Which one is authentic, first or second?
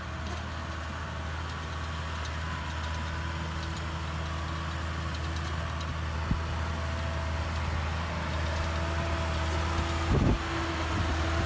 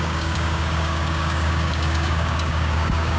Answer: first